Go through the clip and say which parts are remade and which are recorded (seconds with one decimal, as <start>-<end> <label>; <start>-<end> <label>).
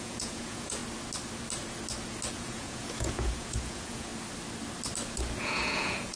0.0-0.8 remade; 0.8-2.3 recorded; 2.3-4.1 remade; 4.1-5.4 recorded; 5.4-6.2 remade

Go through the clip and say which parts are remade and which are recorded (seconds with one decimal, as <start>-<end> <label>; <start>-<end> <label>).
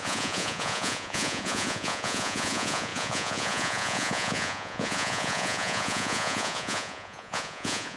0.0-8.0 remade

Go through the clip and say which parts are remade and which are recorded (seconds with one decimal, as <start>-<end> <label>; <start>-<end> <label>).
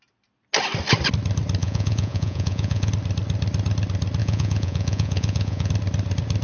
0.0-1.6 recorded; 1.6-2.9 remade; 2.9-4.2 recorded; 4.2-5.7 remade; 5.7-6.4 recorded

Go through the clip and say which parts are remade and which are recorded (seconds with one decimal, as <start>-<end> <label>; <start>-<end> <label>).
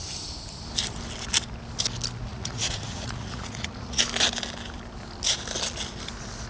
0.0-2.3 recorded; 2.3-4.0 remade; 4.0-6.5 recorded